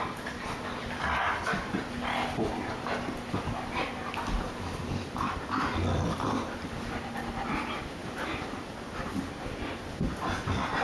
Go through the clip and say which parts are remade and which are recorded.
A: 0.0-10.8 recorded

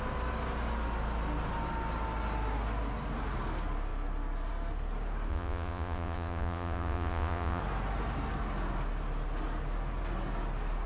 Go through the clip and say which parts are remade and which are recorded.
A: 0.0-5.3 recorded; 5.3-7.6 remade; 7.6-10.9 recorded

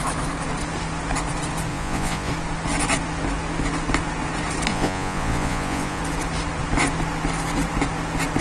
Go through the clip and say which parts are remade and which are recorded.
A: 0.0-1.7 recorded; 1.7-2.3 remade; 2.3-4.7 recorded; 4.7-6.0 remade; 6.0-8.4 recorded